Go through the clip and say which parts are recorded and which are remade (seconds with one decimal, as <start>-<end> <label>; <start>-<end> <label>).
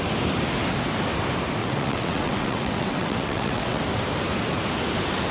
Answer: 0.0-1.6 recorded; 1.6-3.8 remade; 3.8-5.3 recorded